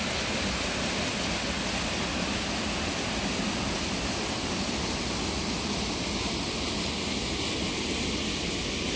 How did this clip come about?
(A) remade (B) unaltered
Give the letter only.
B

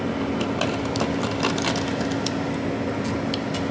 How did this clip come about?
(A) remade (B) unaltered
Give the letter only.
B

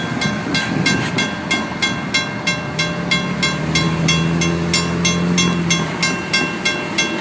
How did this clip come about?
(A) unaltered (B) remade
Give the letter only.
A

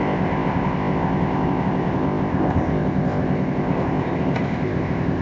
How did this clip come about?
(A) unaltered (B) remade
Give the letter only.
B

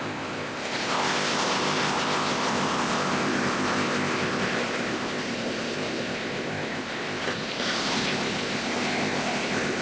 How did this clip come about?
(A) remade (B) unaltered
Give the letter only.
A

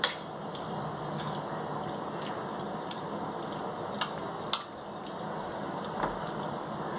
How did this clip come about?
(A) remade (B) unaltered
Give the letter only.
B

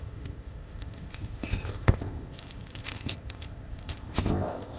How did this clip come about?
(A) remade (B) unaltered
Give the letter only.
A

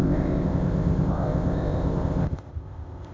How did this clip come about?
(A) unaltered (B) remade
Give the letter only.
B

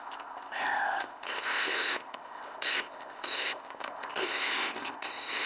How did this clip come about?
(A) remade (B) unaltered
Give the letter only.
A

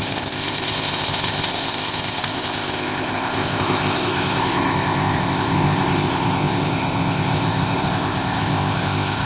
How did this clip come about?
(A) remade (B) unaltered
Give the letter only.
A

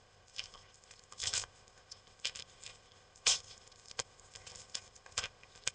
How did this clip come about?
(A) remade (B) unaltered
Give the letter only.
A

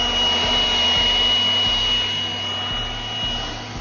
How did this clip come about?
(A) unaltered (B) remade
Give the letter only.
A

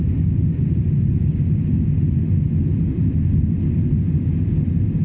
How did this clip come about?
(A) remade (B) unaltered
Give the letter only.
B